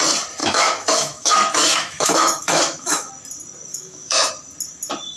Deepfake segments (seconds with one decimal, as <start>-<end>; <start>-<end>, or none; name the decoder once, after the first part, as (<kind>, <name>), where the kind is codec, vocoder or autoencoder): 0.4-3.1 (autoencoder, DAC-VAE); 3.7-4.3